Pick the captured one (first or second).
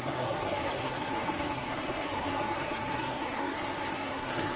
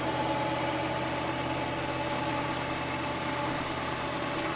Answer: second